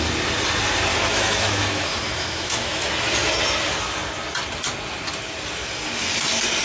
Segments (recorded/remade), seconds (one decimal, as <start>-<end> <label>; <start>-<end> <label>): 0.0-0.9 recorded; 0.9-2.9 remade; 2.9-6.6 recorded